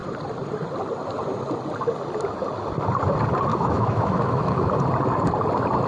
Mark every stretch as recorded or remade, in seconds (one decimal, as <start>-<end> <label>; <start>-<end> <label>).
0.0-3.5 recorded; 3.5-4.7 remade; 4.7-5.9 recorded